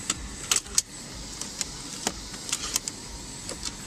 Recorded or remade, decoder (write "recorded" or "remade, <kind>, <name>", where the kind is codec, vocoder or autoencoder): recorded